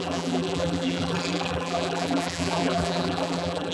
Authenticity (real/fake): fake